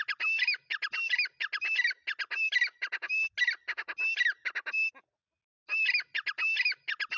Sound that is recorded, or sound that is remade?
recorded